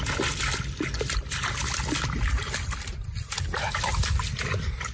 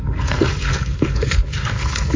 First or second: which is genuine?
first